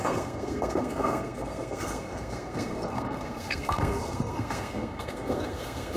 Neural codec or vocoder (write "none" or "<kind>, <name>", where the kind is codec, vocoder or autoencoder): codec, SNAC